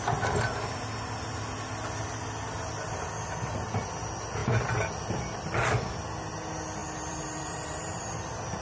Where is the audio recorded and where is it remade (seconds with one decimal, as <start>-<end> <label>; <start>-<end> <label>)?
0.0-6.8 recorded; 6.8-8.0 remade; 8.0-8.6 recorded